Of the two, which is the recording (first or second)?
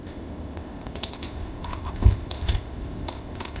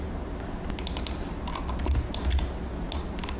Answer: second